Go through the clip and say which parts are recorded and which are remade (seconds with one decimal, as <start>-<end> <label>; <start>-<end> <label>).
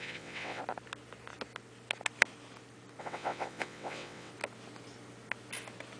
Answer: 0.0-0.6 remade; 0.6-3.0 recorded; 3.0-4.3 remade; 4.3-6.0 recorded